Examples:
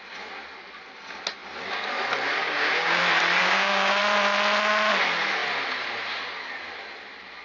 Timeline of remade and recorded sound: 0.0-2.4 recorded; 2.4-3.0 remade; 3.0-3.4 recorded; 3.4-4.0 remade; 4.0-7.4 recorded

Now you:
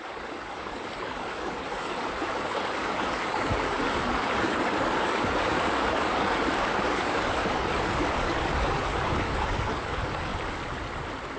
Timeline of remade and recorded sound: 0.0-10.3 remade; 10.3-11.4 recorded